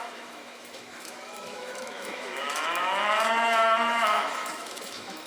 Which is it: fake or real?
fake